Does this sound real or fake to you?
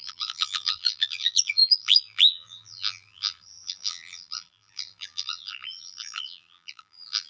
fake